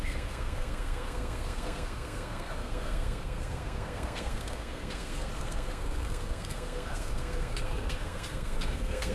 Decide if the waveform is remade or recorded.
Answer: remade